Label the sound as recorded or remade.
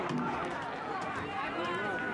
recorded